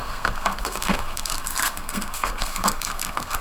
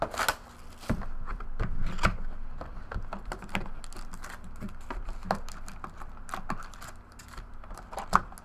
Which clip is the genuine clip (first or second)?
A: second